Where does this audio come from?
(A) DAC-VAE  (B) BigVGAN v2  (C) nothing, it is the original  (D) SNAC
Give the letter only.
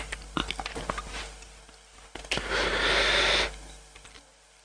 C